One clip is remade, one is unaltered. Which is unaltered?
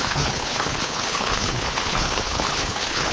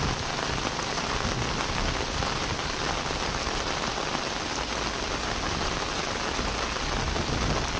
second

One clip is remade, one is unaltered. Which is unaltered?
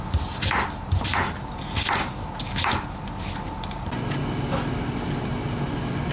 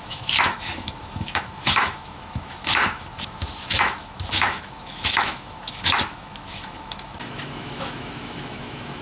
first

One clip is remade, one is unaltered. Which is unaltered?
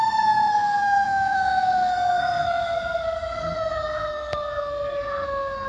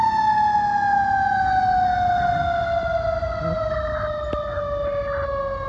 second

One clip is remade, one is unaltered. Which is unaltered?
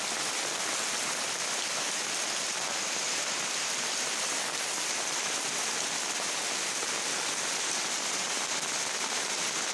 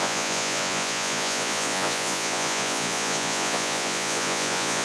first